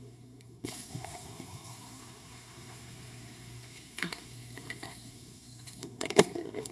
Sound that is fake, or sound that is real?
fake